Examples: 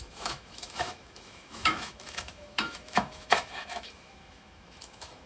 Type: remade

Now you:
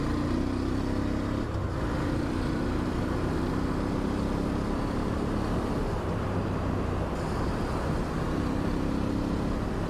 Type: recorded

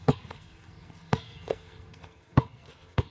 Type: remade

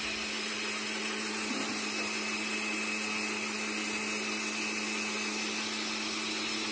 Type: recorded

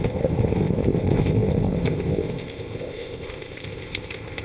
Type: remade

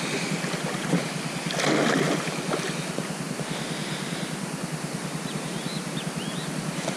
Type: recorded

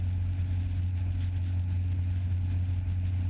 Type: recorded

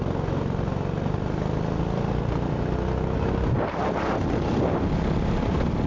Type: recorded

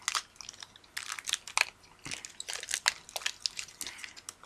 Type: recorded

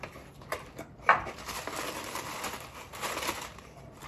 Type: remade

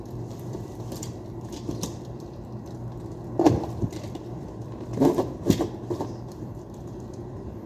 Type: remade